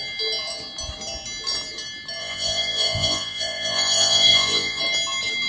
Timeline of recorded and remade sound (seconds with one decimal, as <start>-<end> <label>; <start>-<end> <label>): 0.0-2.2 recorded; 2.2-4.8 remade; 4.8-5.5 recorded